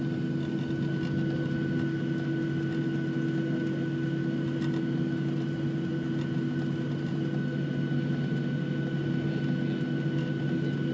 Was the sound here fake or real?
real